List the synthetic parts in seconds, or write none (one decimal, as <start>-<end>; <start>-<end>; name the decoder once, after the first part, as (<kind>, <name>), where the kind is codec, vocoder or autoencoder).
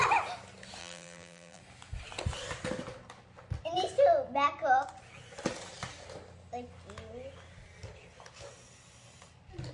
0.8-1.6 (vocoder, BigVGAN v2)